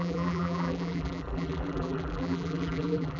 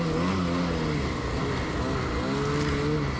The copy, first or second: first